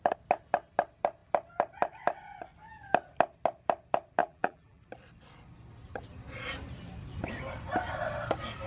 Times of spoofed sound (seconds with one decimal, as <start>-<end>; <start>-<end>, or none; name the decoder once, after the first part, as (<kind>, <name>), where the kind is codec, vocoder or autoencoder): 4.2-4.8 (vocoder, BigVGAN v2)